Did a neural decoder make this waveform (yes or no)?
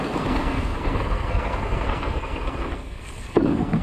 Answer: yes